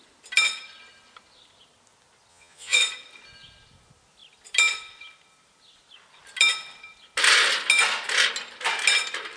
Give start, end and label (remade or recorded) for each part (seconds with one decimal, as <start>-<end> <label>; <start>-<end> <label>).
0.0-2.3 recorded; 2.3-2.8 remade; 2.8-9.4 recorded